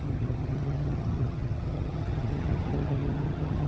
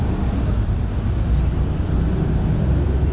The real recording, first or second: second